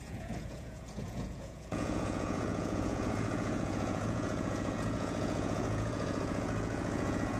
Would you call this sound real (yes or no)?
no